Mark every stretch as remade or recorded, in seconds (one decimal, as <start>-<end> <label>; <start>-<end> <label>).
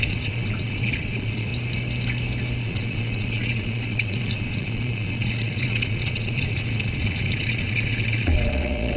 0.0-1.5 remade; 1.5-2.6 recorded; 2.6-9.0 remade